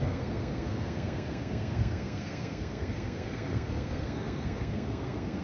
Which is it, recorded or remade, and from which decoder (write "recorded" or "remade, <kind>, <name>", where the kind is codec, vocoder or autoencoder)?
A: remade, codec, SNAC